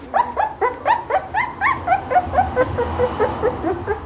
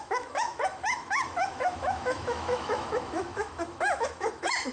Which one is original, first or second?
first